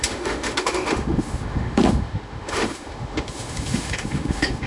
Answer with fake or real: fake